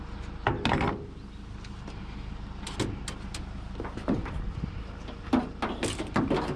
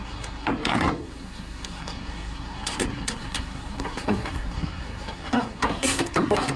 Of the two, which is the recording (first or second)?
first